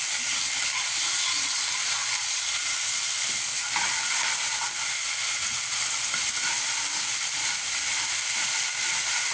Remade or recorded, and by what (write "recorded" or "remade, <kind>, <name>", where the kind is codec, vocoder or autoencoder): recorded